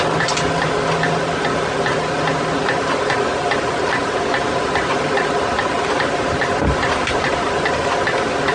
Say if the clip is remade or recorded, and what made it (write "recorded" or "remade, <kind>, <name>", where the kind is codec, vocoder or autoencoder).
recorded